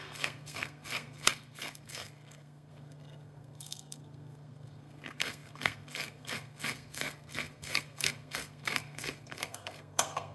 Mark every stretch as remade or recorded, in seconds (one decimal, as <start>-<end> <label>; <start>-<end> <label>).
0.0-10.3 remade